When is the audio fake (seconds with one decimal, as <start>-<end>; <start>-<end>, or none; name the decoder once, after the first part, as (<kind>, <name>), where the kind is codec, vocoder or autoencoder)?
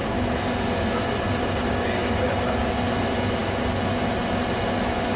none